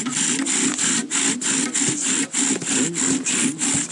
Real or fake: real